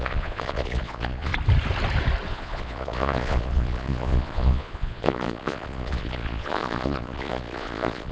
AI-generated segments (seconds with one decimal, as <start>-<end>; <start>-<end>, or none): 0.0-1.3; 2.3-8.1

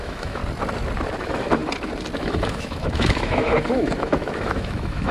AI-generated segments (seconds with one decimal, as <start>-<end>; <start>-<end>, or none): 0.0-0.4; 1.2-1.6; 2.2-5.1

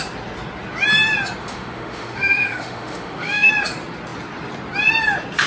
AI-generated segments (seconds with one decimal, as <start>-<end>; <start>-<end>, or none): 1.4-3.5